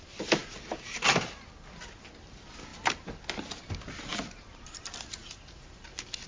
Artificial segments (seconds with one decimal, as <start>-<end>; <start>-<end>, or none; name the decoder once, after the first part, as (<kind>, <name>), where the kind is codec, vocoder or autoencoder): none